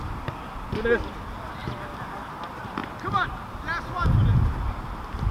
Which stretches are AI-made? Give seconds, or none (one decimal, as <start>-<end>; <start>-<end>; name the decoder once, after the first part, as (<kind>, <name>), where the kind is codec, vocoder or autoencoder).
1.6-2.3 (vocoder, BigVGAN v2)

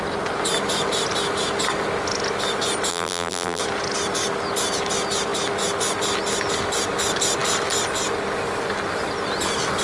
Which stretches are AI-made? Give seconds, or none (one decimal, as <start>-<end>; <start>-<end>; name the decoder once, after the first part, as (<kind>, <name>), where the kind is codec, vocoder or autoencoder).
2.9-3.6 (vocoder, BigVGAN v2)